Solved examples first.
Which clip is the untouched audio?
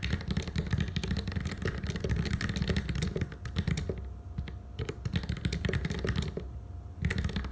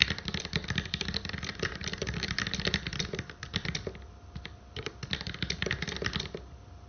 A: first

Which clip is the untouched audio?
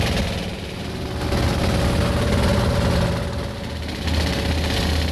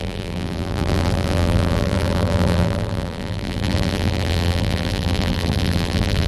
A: first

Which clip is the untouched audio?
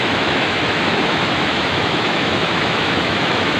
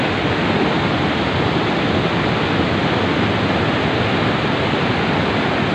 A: second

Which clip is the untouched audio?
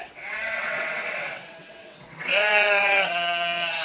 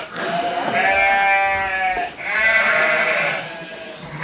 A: second